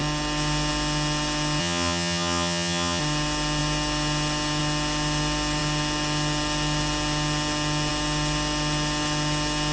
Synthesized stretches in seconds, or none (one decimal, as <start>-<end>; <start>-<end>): 1.6-3.0